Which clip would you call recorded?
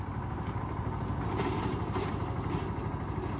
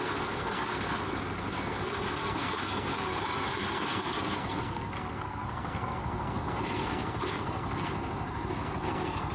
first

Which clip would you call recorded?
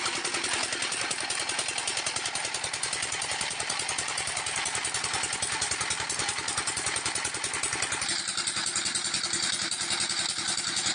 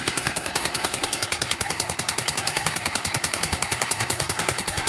first